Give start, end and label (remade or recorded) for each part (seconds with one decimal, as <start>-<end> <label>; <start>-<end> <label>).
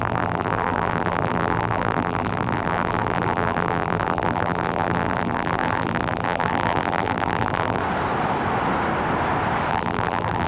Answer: 0.0-7.8 remade; 7.8-9.7 recorded; 9.7-10.5 remade